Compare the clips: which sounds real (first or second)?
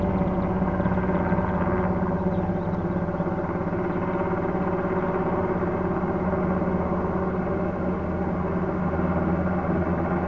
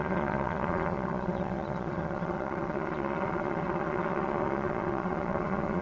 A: first